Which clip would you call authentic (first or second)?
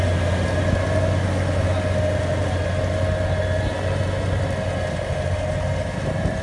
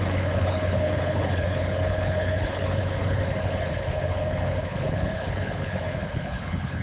first